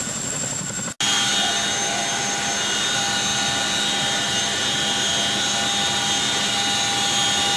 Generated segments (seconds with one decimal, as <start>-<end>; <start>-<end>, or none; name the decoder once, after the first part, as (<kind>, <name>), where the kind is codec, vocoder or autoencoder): none